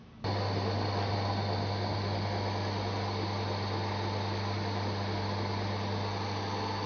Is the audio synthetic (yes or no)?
no